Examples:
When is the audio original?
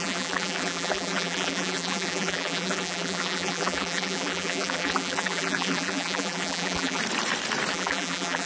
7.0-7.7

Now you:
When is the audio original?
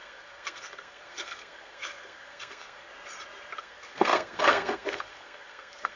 2.9-3.6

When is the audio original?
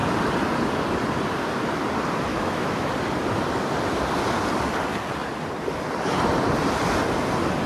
0.0-2.3; 2.9-7.7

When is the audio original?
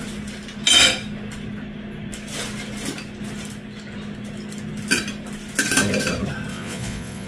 0.0-6.5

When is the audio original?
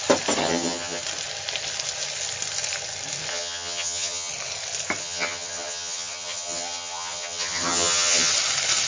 0.0-0.4; 1.0-3.3; 4.3-5.0; 8.3-8.9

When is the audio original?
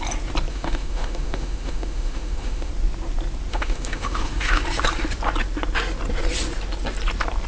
0.0-0.5; 2.7-3.5; 4.6-7.5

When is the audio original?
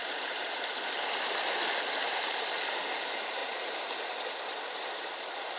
0.6-3.4; 3.9-5.6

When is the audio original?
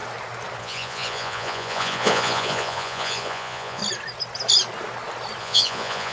0.0-0.6; 3.8-5.4